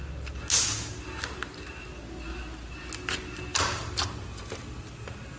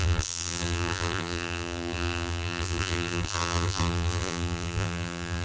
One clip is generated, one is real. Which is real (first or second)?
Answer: first